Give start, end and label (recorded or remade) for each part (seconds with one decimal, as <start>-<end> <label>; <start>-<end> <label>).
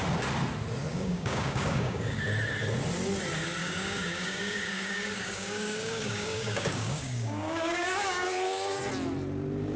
0.0-0.9 recorded; 0.9-2.2 remade; 2.2-3.6 recorded; 3.6-8.8 remade; 8.8-9.8 recorded